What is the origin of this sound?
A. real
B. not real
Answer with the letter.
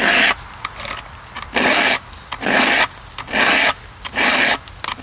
A